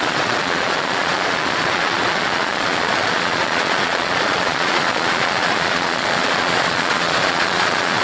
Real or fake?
fake